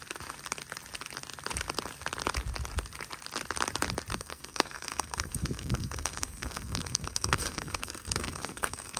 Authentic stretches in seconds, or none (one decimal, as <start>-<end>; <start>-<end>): 0.0-4.1